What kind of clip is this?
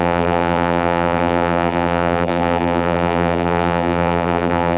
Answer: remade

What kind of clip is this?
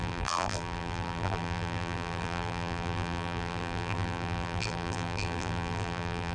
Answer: remade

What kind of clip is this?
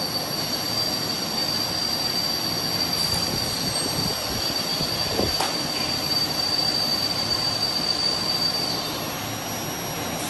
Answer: recorded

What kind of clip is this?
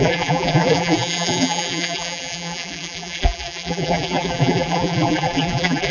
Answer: remade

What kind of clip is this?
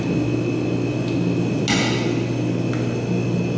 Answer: recorded